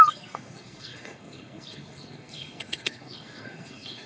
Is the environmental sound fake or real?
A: fake